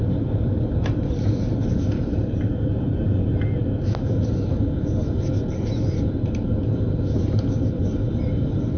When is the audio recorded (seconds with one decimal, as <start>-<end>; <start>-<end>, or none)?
0.0-8.8

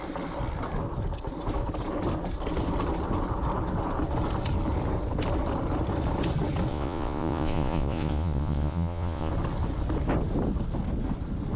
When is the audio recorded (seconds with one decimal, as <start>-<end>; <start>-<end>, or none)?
0.0-6.7; 9.3-11.6